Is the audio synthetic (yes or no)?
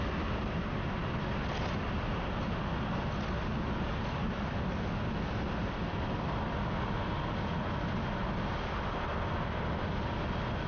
no